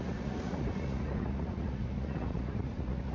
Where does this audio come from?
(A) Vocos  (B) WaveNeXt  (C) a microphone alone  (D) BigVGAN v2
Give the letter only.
A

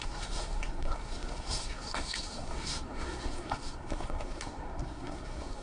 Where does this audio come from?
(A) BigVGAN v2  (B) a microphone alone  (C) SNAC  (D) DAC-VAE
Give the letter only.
C